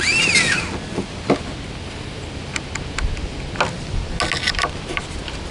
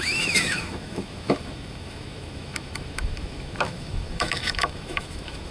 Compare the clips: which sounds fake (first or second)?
second